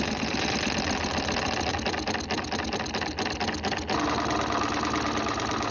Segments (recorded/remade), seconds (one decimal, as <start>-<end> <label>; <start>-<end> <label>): 0.0-5.7 recorded